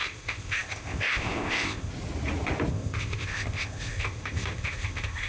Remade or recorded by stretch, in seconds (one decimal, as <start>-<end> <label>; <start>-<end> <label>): 0.0-1.9 remade; 1.9-2.7 recorded; 2.7-5.3 remade